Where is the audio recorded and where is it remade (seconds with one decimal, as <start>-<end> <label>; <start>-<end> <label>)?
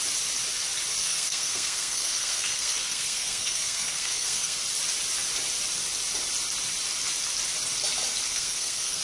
0.0-1.0 recorded; 1.0-4.6 remade; 4.6-8.3 recorded; 8.3-9.0 remade